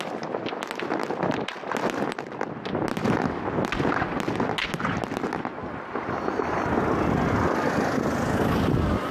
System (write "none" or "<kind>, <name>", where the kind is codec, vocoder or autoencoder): none